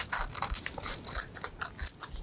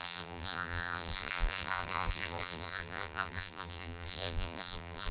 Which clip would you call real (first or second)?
first